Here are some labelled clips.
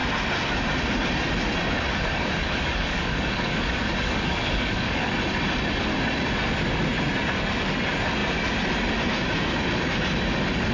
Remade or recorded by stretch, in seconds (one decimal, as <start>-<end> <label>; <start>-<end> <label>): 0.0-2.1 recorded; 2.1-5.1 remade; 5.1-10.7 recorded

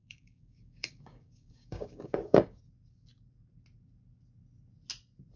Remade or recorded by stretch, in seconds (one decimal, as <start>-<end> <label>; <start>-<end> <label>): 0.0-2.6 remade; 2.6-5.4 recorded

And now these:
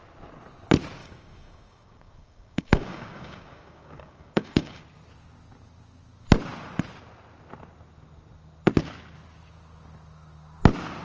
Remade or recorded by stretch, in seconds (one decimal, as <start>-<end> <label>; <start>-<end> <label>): 0.0-1.0 recorded; 1.0-4.8 remade; 4.8-11.0 recorded

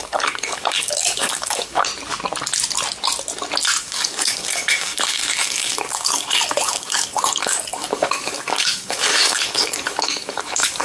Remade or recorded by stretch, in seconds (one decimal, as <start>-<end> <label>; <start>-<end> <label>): 0.0-1.9 remade; 1.9-3.8 recorded; 3.8-10.8 remade